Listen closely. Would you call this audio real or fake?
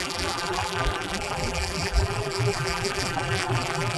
fake